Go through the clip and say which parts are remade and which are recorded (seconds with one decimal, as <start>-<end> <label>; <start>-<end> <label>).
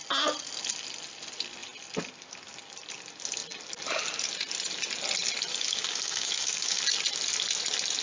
0.0-5.5 recorded; 5.5-6.8 remade; 6.8-8.0 recorded